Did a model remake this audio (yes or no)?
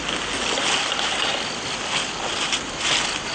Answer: no